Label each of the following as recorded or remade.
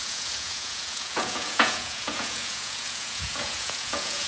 remade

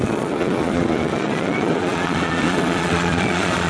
remade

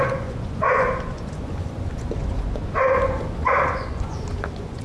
remade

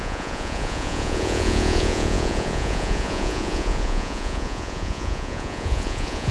remade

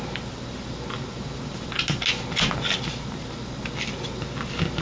recorded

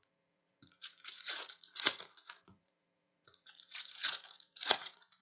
remade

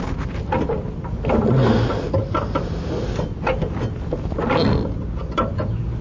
recorded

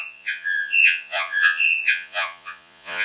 remade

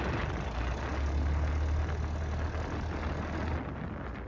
recorded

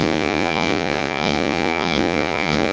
remade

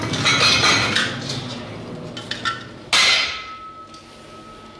recorded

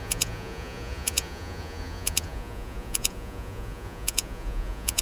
remade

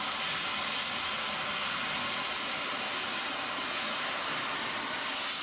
recorded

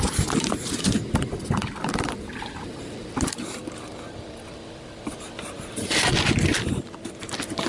recorded